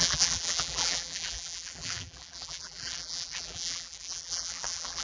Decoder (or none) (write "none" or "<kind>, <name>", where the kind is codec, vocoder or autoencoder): vocoder, BigVGAN v2